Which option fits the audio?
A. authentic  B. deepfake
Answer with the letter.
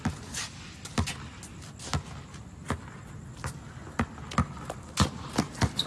A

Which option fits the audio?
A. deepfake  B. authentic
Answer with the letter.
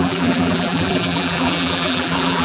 A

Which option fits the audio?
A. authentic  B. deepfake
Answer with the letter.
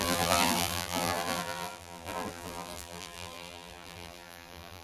B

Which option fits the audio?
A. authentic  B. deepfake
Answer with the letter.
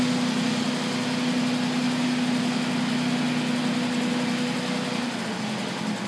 A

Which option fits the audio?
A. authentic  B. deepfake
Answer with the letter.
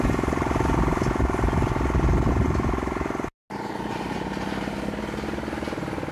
A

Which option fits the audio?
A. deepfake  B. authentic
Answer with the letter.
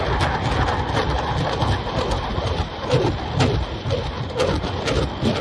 B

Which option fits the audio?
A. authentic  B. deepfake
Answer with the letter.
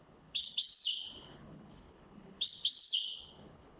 B